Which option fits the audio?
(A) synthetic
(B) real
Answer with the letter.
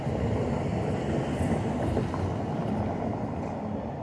B